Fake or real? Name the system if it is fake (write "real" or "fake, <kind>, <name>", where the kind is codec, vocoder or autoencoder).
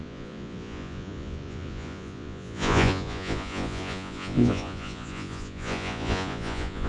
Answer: fake, vocoder, Vocos